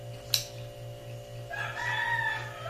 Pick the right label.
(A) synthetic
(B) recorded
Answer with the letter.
B